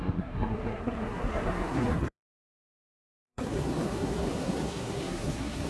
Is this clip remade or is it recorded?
remade